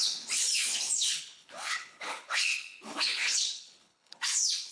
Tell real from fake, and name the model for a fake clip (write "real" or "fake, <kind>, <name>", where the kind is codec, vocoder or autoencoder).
fake, codec, HILCodec